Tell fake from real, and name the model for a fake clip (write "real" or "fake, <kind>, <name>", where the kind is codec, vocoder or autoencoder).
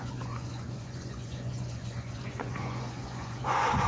fake, vocoder, Vocos